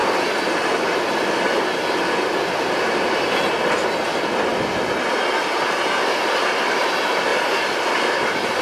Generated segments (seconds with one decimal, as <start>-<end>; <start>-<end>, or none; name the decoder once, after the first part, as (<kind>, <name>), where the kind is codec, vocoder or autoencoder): none